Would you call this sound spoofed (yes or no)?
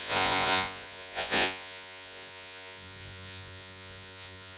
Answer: yes